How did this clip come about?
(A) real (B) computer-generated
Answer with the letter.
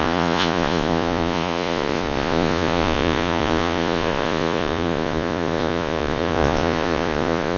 B